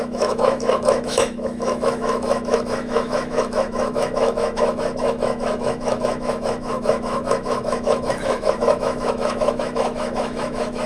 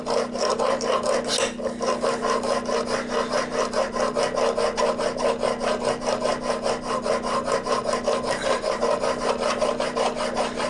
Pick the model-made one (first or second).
first